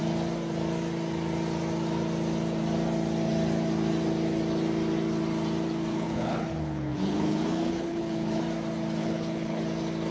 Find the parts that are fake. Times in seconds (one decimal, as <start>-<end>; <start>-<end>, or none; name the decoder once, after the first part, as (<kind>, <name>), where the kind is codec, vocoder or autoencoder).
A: 5.9-8.4 (codec, HILCodec); 9.0-9.6